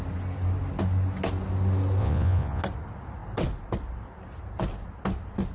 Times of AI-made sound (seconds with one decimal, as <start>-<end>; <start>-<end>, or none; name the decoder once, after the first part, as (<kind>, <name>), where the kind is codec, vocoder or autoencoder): 2.0-2.6 (vocoder, Vocos)